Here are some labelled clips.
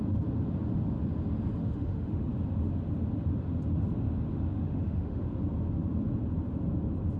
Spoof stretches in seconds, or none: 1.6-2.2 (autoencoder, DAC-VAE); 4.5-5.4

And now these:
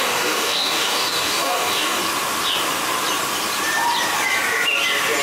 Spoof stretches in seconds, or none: 0.0-2.0 (codec, DAC)

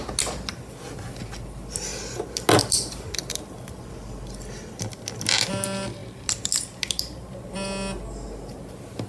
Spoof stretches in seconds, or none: none